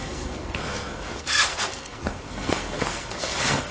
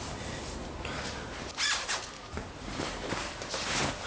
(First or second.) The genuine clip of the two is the second